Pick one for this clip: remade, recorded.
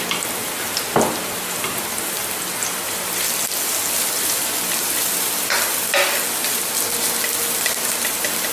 recorded